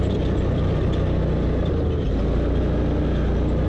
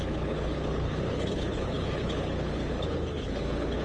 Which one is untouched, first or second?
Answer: first